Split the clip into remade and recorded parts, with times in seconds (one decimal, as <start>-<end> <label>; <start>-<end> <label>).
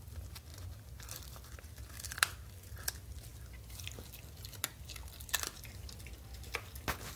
0.0-7.2 recorded